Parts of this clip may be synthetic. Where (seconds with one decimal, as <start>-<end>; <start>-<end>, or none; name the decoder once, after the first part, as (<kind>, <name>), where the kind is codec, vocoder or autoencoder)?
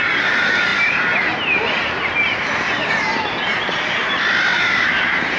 none